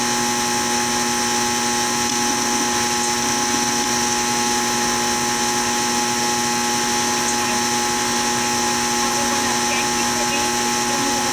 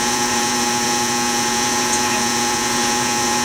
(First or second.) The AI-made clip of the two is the second